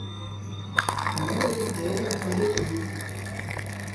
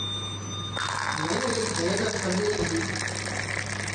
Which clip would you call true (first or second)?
second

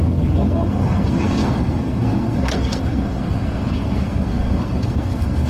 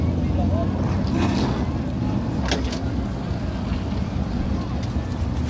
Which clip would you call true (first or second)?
second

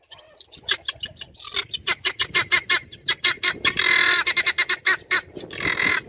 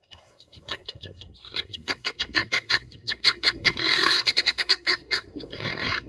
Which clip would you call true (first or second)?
first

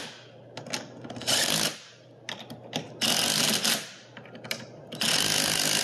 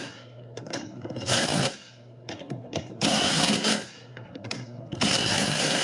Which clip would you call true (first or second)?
first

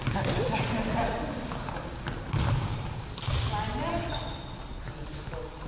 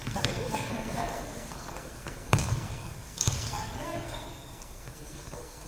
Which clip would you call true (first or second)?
first